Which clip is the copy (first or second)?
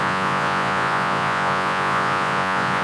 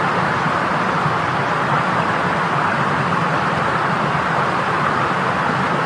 first